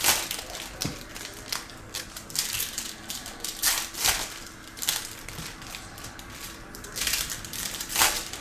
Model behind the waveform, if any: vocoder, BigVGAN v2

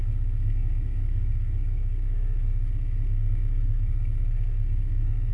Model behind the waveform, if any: codec, SNAC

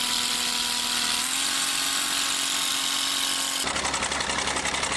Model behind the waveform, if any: none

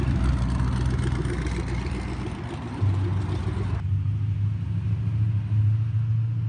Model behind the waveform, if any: none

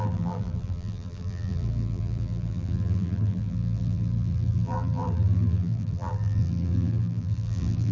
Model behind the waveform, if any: vocoder, BigVGAN v2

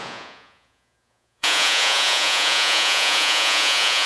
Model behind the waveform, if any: vocoder, Vocos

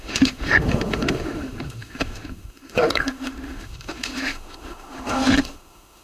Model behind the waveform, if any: autoencoder, DAC-VAE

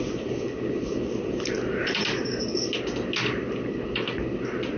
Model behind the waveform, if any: none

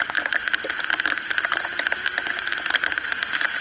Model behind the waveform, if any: vocoder, BigVGAN v2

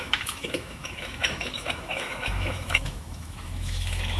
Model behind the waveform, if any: autoencoder, DAC-VAE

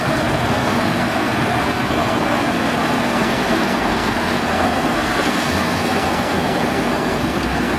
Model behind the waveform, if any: codec, SNAC